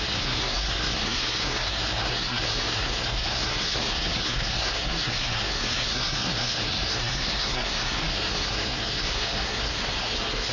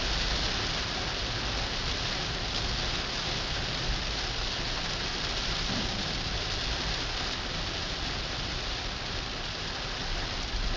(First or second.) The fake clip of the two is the first